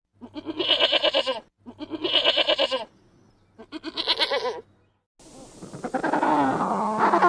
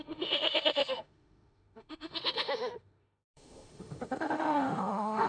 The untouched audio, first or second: first